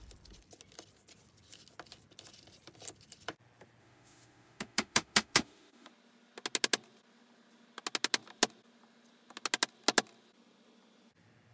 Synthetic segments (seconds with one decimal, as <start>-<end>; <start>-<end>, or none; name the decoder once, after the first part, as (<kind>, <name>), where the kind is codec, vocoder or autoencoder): 3.8-5.9 (autoencoder, DAC-VAE)

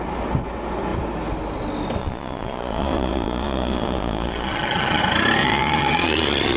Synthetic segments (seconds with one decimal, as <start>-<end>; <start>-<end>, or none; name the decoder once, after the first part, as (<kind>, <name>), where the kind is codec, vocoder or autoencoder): 2.0-5.0 (vocoder, Vocos); 5.4-6.6